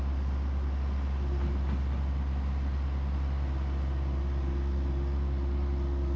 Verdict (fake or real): real